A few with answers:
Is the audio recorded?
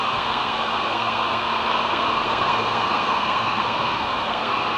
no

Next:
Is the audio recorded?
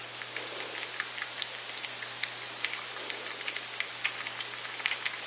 yes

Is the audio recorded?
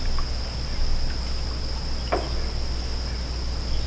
yes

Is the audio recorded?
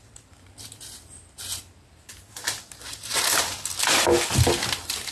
yes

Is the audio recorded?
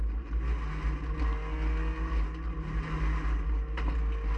yes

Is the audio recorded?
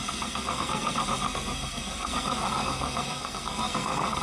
no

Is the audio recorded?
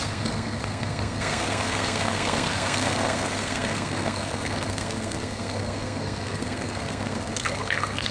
no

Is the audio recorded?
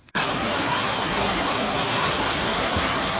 no